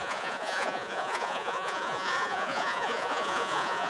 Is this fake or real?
fake